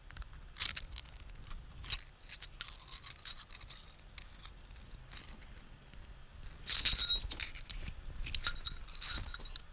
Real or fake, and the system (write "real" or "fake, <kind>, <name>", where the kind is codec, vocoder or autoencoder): real